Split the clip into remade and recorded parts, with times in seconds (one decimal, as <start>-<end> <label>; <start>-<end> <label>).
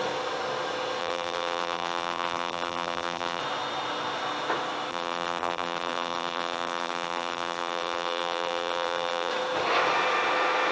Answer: 0.0-1.0 recorded; 1.0-3.4 remade; 3.4-4.9 recorded; 4.9-9.3 remade; 9.3-10.7 recorded